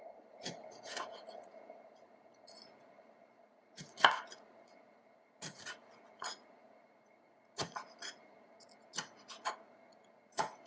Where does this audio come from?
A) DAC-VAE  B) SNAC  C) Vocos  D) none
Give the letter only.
C